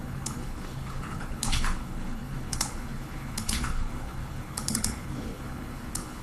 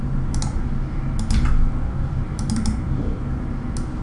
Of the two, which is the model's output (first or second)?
first